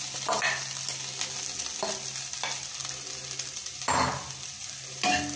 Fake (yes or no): no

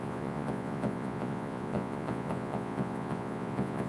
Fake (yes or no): yes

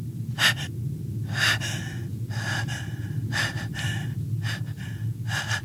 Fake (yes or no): no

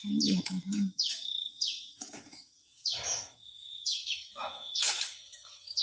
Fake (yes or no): yes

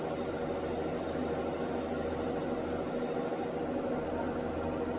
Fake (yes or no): no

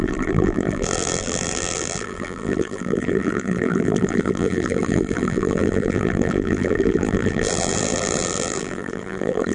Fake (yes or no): yes